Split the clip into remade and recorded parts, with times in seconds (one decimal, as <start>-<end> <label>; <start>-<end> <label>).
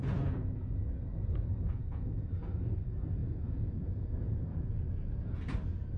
0.0-0.9 remade; 0.9-1.8 recorded; 1.8-2.3 remade; 2.3-3.2 recorded; 3.2-5.4 remade; 5.4-6.0 recorded